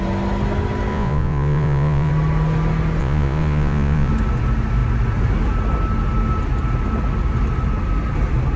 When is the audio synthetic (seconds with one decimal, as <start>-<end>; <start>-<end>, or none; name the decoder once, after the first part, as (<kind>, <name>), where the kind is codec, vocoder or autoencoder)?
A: 0.9-2.1 (vocoder, Vocos); 3.0-4.1

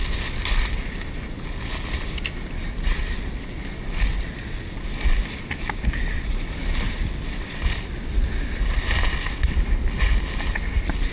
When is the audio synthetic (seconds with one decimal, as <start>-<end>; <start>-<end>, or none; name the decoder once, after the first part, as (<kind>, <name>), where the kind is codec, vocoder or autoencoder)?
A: none